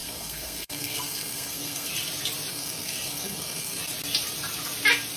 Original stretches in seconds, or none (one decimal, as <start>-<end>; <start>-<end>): 1.9-2.5; 3.8-5.2